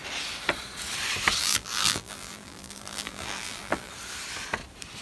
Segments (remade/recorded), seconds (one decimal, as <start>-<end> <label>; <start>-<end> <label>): 0.0-1.4 recorded; 1.4-3.9 remade; 3.9-5.0 recorded